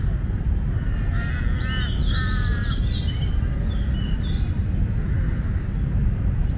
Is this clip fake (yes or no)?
no